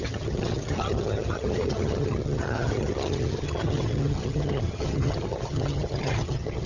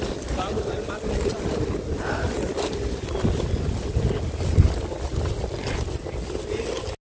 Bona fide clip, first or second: second